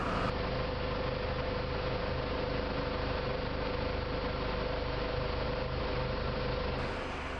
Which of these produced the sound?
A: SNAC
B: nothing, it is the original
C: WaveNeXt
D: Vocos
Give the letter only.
B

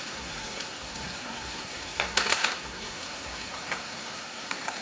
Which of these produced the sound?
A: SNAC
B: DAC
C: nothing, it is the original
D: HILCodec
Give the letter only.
A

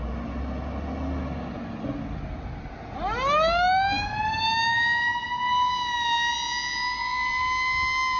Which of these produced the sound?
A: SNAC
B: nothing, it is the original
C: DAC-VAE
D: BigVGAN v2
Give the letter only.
B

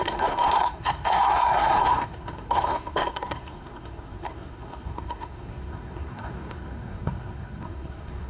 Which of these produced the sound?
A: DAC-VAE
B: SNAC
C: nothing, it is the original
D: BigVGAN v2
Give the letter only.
B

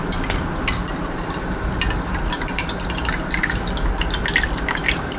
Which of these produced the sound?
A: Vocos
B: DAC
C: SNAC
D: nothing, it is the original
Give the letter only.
D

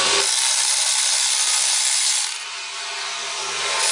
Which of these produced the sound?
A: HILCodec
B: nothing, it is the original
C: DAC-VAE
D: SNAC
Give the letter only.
B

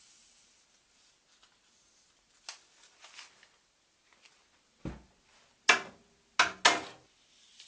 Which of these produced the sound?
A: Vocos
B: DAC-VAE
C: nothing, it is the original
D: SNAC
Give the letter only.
C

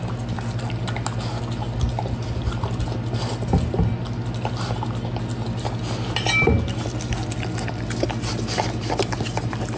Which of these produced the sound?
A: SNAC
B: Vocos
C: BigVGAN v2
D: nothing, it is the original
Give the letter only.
D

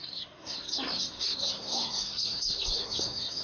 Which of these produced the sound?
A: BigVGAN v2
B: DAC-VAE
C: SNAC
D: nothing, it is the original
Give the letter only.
C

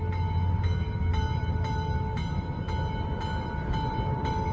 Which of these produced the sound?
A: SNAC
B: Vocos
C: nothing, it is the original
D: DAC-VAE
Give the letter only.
C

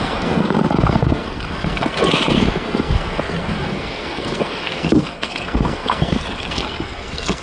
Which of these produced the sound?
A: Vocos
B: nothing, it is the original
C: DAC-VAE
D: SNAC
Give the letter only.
D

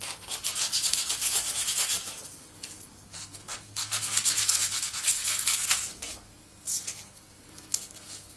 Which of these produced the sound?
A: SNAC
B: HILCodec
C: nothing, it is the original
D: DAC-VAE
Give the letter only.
A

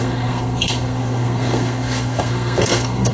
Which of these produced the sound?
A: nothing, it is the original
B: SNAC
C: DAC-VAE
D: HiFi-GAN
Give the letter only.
B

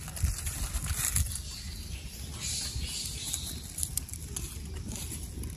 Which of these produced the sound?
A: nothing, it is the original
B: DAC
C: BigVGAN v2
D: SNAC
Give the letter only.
A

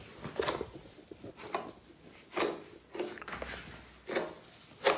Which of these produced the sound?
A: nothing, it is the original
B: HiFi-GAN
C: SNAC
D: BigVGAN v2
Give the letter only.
A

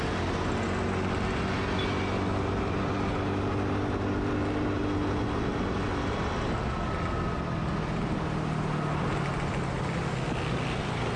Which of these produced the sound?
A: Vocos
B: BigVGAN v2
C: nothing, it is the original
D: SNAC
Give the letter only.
C